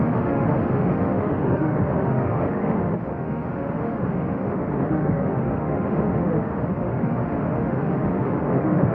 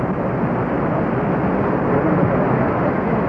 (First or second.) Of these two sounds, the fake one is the first